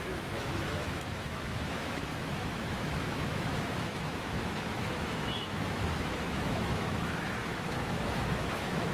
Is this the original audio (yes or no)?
no